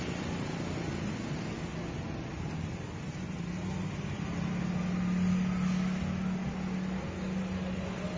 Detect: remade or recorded recorded